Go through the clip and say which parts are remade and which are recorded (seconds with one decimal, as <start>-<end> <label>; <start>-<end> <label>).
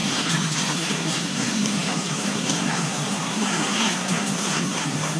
0.0-5.2 remade